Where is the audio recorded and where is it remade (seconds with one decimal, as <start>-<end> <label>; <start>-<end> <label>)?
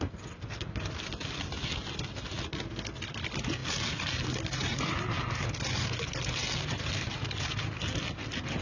0.0-8.6 recorded